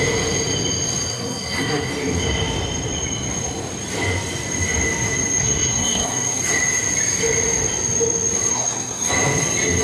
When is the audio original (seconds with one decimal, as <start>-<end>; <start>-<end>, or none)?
0.0-1.1; 1.9-5.4; 6.4-8.5; 9.1-9.8